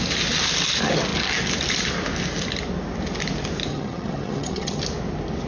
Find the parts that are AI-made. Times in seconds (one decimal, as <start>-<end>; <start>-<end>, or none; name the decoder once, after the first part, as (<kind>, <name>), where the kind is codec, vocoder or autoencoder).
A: 3.7-4.8 (vocoder, HiFi-GAN)